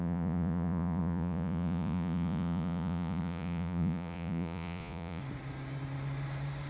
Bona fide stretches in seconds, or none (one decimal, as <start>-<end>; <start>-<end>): 5.2-6.7